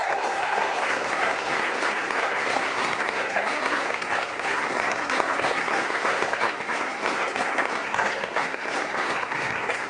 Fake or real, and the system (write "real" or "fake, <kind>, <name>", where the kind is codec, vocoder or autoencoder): fake, codec, SNAC